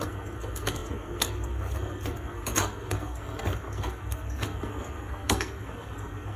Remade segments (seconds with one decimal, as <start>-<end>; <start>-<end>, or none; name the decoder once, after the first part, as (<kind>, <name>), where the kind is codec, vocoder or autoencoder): 0.0-6.4 (codec, SNAC)